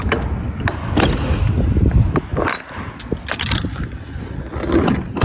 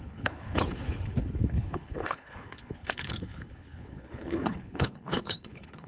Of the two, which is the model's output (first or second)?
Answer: second